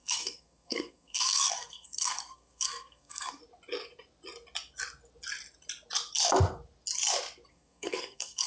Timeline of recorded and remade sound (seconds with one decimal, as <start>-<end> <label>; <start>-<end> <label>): 0.0-3.4 remade; 3.4-7.5 recorded; 7.5-8.5 remade